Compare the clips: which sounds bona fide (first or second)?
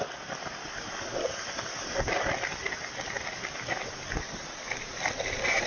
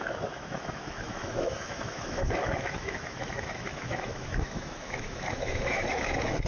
first